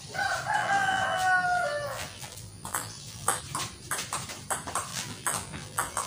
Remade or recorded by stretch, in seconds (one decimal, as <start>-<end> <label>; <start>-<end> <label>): 0.0-0.6 recorded; 0.6-3.4 remade; 3.4-4.9 recorded; 4.9-6.1 remade